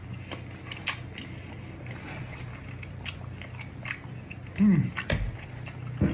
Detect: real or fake real